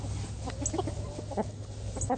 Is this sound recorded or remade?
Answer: recorded